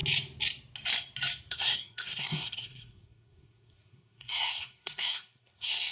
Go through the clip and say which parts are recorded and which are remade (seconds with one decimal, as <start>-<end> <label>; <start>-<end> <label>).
0.0-1.5 recorded; 1.5-5.9 remade